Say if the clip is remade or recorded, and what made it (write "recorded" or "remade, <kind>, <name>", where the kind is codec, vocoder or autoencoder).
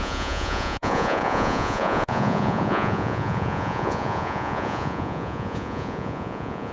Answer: remade, vocoder, Vocos